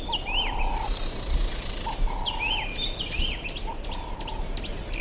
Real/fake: real